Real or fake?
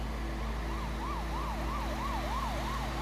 real